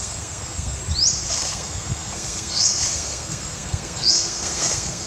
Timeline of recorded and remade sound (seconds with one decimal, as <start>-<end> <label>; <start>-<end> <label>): 0.0-0.8 remade; 0.8-1.3 recorded; 1.3-5.1 remade